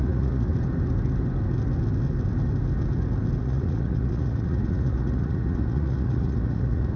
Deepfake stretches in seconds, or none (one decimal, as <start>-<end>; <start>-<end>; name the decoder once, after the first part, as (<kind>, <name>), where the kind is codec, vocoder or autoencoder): 0.0-0.5 (vocoder, Vocos); 3.4-7.0